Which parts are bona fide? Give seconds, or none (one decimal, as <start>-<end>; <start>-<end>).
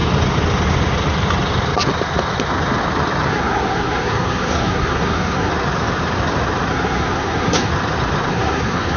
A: 0.0-3.3; 5.5-6.7; 7.7-8.3